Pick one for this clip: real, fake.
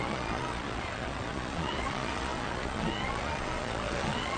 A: fake